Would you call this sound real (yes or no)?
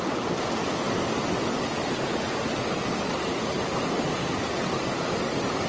yes